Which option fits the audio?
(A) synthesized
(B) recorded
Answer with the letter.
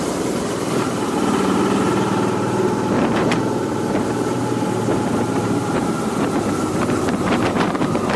A